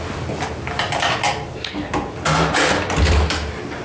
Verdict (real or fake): real